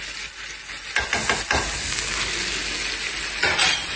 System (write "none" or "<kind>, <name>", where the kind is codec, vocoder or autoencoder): none